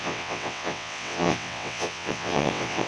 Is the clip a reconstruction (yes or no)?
yes